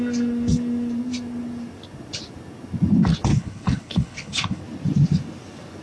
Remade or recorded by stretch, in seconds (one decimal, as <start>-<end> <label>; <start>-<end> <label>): 0.0-3.3 recorded; 3.3-4.6 remade; 4.6-5.8 recorded